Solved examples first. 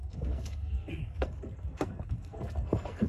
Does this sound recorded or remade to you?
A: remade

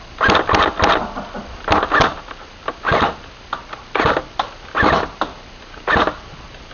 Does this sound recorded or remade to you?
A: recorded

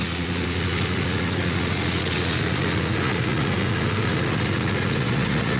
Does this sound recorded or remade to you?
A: remade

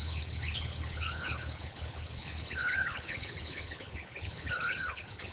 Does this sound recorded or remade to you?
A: remade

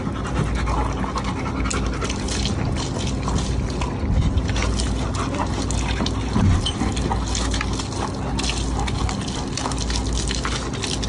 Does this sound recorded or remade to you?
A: recorded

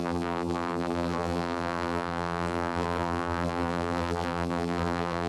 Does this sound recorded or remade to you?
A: remade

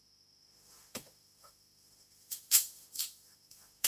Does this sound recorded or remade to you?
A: remade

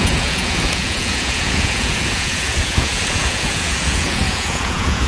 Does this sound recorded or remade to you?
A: remade